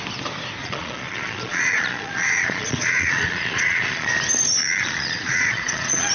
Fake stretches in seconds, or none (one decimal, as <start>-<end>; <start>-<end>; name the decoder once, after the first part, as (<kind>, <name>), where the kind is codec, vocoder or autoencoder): 0.6-4.1 (vocoder, Vocos); 4.6-6.1